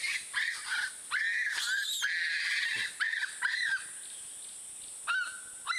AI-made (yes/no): no